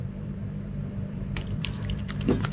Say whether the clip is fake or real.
fake